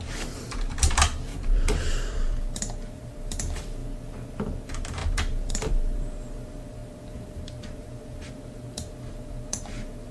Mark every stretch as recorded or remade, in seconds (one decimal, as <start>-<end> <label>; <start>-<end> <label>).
0.0-3.8 remade; 3.8-4.6 recorded; 4.6-10.1 remade